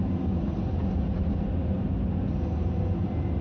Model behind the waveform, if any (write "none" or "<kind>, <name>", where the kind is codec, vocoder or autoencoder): vocoder, BigVGAN v2